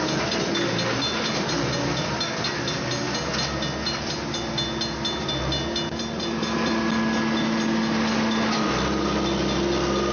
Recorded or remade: recorded